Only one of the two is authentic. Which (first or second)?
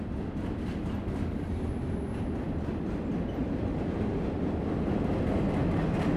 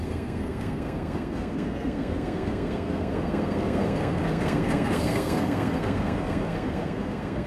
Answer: first